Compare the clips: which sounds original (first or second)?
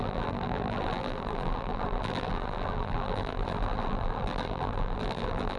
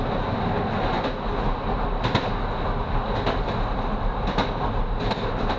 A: second